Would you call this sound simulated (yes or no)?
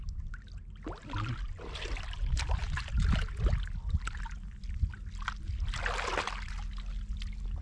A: no